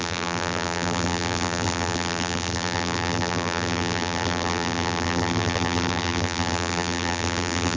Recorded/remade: remade